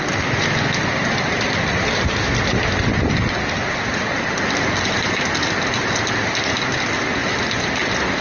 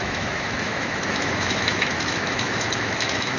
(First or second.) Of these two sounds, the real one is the first